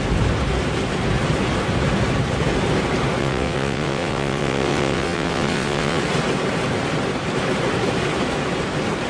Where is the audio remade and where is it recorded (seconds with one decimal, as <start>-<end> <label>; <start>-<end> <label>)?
0.0-3.2 recorded; 3.2-6.0 remade; 6.0-9.1 recorded